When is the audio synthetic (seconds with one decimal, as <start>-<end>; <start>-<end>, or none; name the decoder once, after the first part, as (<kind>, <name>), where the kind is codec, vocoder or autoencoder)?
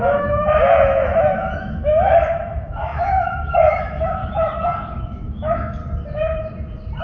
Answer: 0.0-4.2 (autoencoder, DAC-VAE); 5.0-5.8